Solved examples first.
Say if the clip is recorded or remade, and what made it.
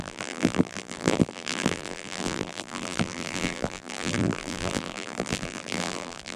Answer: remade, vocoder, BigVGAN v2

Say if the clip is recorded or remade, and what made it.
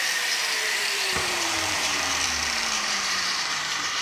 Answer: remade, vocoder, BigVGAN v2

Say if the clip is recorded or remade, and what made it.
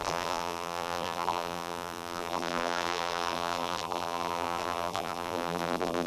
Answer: remade, vocoder, BigVGAN v2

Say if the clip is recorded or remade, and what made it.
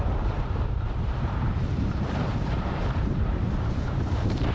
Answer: remade, vocoder, BigVGAN v2